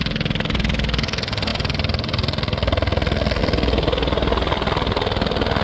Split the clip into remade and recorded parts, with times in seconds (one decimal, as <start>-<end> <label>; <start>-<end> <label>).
0.0-5.6 recorded